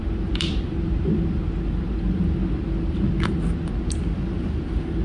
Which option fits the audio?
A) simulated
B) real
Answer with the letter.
B